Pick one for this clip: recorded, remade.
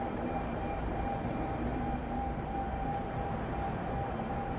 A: remade